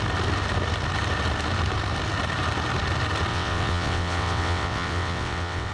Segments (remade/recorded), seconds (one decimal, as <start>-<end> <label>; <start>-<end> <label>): 0.0-3.3 recorded; 3.3-5.7 remade